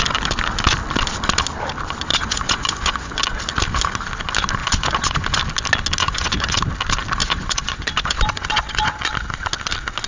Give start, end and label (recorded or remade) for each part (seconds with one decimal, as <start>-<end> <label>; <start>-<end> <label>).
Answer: 0.0-2.1 recorded; 2.1-3.2 remade; 3.2-4.6 recorded; 4.6-5.4 remade; 5.4-6.0 recorded; 6.0-6.6 remade; 6.6-7.2 recorded; 7.2-9.1 remade; 9.1-10.1 recorded